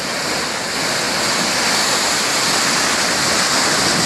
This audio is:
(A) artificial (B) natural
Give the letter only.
B